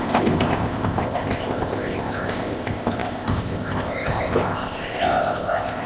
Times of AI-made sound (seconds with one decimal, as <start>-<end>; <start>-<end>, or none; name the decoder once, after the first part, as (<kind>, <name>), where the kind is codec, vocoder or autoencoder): 0.0-5.9 (codec, ZipCodec)